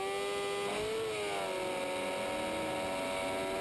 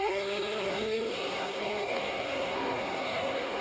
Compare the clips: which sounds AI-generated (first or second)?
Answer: second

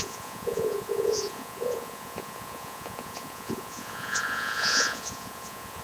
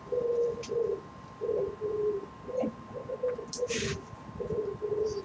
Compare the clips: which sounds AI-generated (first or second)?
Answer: first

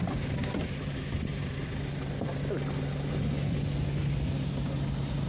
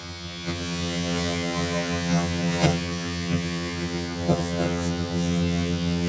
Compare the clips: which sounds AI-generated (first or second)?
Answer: second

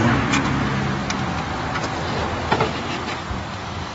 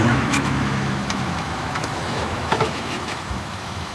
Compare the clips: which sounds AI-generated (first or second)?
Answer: second